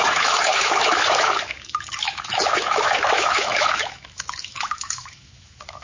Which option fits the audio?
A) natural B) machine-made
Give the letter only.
B